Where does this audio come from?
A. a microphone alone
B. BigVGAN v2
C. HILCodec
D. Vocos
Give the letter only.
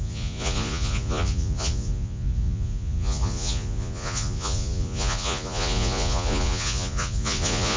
D